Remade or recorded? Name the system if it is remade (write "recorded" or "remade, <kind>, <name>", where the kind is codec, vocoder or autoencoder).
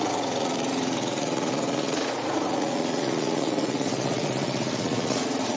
remade, vocoder, Vocos